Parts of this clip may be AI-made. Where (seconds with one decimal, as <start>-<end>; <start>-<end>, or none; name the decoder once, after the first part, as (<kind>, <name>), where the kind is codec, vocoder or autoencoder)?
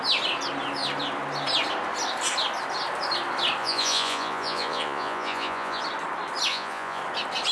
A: 3.6-5.8 (vocoder, Vocos); 6.5-7.0